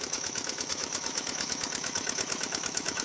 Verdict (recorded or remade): remade